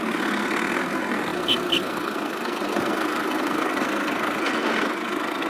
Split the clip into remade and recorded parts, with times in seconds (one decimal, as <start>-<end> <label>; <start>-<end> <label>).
0.0-5.5 remade